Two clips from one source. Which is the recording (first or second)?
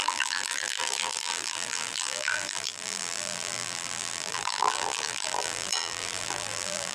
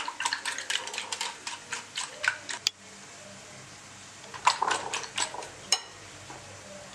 second